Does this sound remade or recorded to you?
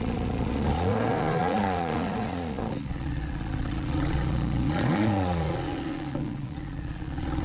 remade